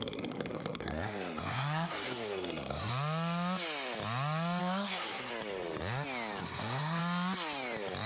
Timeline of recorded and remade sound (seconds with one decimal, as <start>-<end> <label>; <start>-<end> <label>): 0.0-2.9 remade; 2.9-4.6 recorded; 4.6-5.3 remade; 5.3-6.4 recorded; 6.4-7.0 remade; 7.0-8.1 recorded